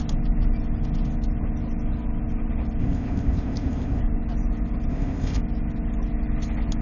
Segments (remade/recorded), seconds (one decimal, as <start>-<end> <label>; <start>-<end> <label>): 0.0-2.8 recorded; 2.8-4.0 remade; 4.0-4.9 recorded; 4.9-5.4 remade; 5.4-6.8 recorded